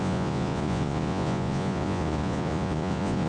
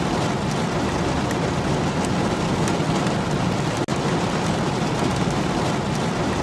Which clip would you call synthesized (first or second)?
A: first